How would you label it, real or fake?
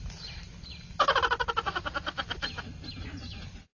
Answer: real